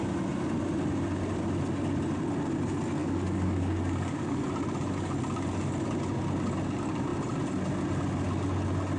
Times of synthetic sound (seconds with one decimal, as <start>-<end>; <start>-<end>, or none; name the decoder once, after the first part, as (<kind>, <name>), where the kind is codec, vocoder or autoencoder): 3.0-4.4 (codec, DAC)